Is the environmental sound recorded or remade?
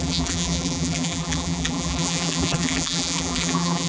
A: remade